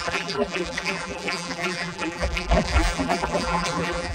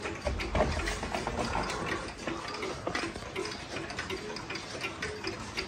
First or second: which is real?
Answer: second